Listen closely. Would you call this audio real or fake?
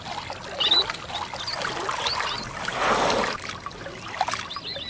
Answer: real